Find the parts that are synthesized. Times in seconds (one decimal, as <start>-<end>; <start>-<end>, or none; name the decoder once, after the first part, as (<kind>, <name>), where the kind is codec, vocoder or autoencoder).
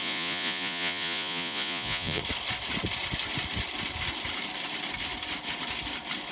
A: 0.0-2.2 (vocoder, Vocos)